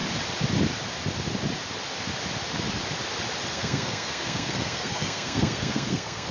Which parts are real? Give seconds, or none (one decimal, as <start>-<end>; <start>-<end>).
0.0-3.5